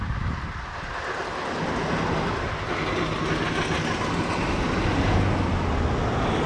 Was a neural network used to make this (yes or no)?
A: no